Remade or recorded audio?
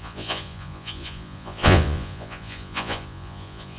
remade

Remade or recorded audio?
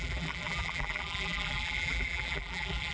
remade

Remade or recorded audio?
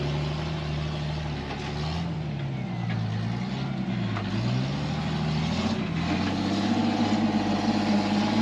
recorded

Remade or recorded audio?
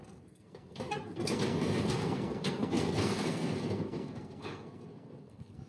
remade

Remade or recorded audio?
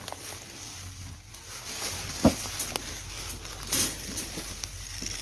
recorded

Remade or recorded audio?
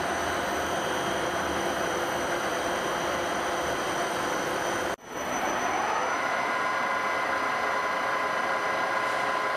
remade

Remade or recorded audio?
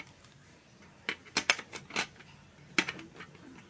recorded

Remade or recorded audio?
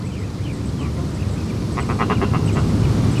recorded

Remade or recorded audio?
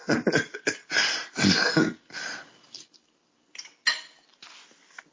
recorded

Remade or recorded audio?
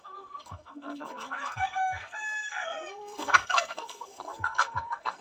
remade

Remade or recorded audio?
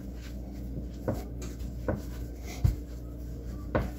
recorded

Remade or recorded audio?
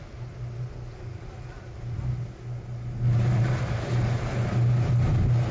recorded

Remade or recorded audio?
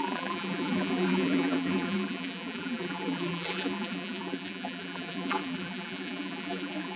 remade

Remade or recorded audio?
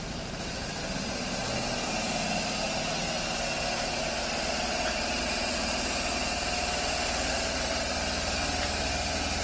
recorded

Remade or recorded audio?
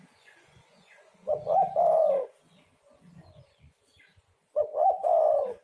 remade